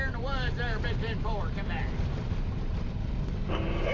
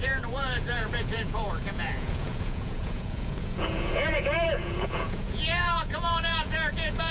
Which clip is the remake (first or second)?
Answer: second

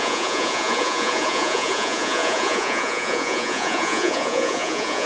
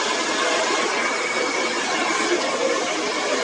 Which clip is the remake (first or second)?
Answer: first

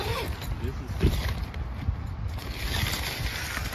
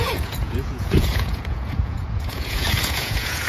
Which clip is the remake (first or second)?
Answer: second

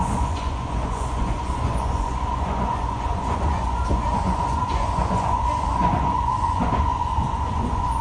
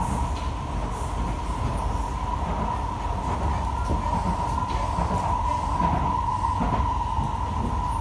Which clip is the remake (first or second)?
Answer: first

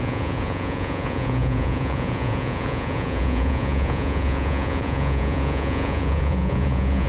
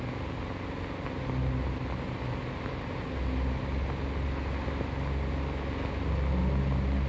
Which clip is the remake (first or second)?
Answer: first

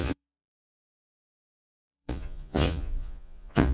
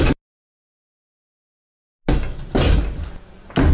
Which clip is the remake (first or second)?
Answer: first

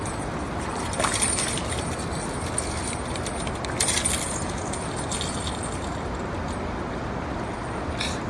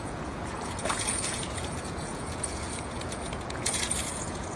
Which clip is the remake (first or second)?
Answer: second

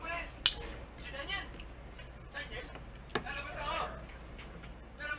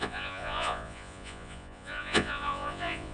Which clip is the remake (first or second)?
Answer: second